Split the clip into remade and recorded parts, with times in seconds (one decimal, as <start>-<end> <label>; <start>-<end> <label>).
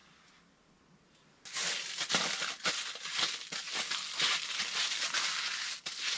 0.0-6.2 recorded